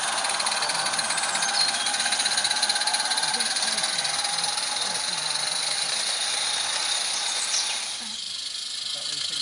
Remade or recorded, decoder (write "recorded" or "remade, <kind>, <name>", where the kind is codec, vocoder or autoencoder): recorded